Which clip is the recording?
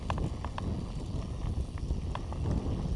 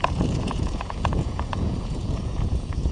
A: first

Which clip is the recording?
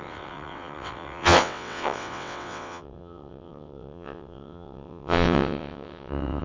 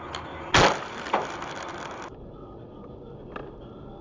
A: second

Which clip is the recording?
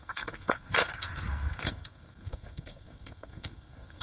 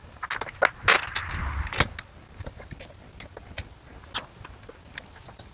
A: second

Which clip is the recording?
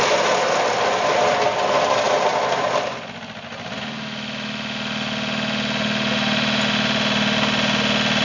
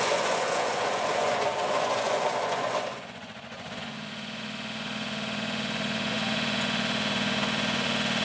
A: first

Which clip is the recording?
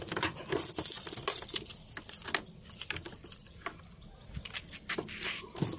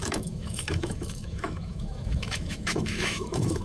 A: first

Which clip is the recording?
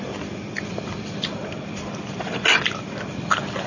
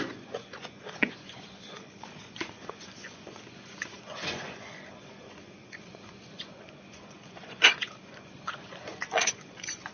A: first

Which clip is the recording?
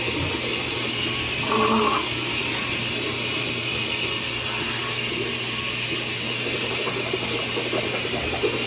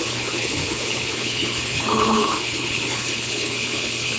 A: first